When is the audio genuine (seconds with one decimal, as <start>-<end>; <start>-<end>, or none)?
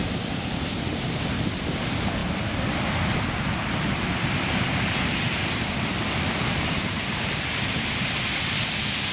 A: 2.2-2.9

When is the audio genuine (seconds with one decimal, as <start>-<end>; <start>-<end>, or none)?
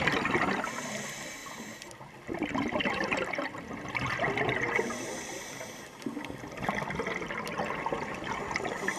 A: 0.0-9.0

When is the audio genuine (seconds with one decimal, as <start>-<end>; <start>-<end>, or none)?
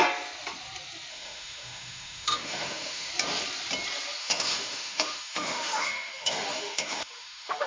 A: 0.0-1.1; 3.1-4.2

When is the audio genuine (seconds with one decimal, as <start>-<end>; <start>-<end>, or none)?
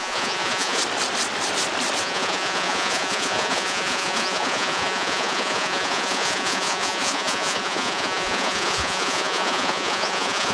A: 0.8-2.0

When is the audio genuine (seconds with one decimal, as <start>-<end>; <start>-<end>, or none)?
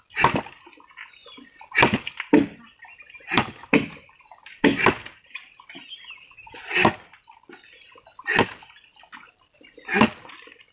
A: 0.0-10.7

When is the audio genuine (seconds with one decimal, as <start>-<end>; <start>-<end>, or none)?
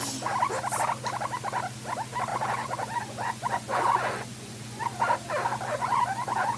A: 0.0-2.3; 4.8-5.7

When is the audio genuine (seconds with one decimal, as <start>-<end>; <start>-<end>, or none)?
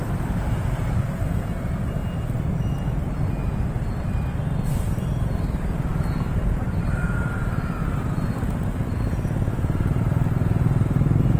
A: 0.0-5.9; 6.9-11.4